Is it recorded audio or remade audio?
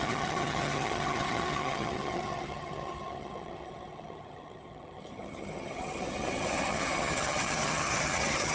remade